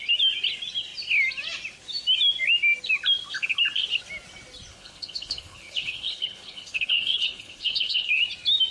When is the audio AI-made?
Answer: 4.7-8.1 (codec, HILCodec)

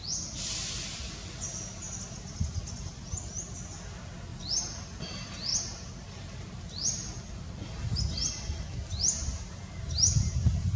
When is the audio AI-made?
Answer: none

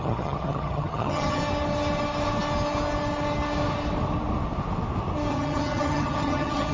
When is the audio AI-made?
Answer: 0.0-1.4 (vocoder, HiFi-GAN); 5.3-6.7

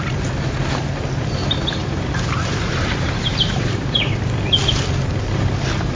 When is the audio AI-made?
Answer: 1.4-4.0 (vocoder, BigVGAN v2)

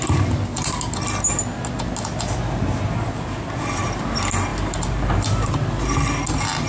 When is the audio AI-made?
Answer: 4.5-5.5 (vocoder, BigVGAN v2)

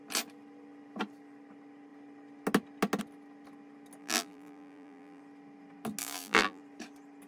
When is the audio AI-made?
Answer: 4.0-5.2 (vocoder, BigVGAN v2); 6.0-6.6

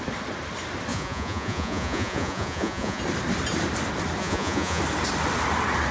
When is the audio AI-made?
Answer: 0.9-3.0 (vocoder, Vocos); 4.2-4.8

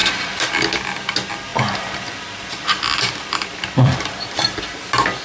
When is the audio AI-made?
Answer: 0.0-0.9 (vocoder, BigVGAN v2); 1.5-4.6